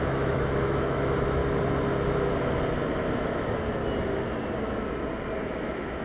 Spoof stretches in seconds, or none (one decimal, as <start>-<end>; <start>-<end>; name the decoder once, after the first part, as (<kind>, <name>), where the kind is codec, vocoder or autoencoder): 0.0-1.4 (autoencoder, DAC-VAE); 3.3-3.8; 5.4-6.0